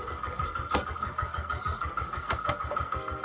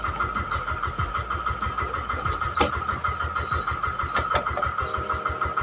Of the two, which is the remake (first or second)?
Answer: first